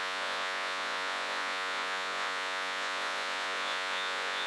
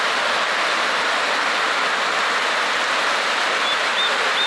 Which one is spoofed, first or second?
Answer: first